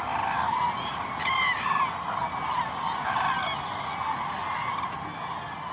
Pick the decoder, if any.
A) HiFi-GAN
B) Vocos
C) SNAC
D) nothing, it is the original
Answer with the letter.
D